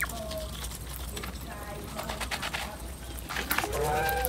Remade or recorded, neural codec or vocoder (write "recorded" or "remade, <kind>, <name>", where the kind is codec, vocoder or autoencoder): recorded